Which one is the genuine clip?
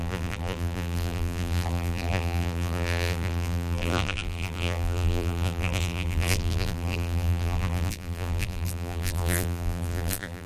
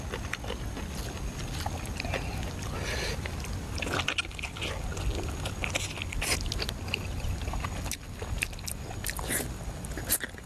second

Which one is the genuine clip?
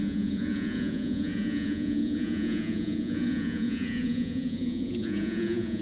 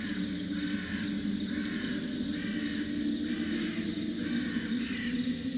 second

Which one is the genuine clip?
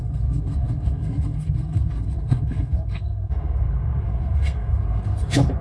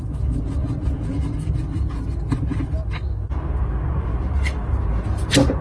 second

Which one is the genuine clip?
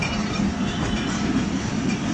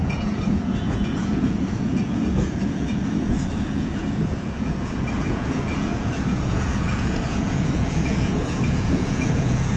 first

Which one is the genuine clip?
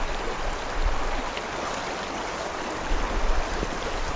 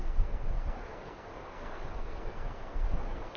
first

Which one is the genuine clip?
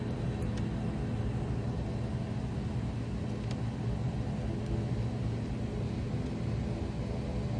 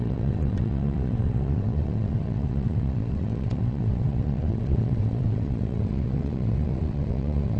first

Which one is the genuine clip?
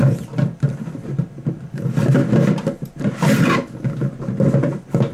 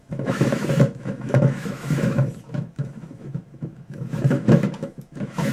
first